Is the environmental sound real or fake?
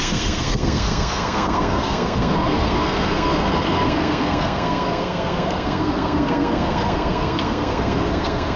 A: fake